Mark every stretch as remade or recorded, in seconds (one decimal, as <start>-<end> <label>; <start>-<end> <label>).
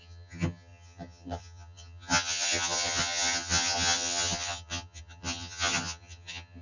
0.0-6.6 remade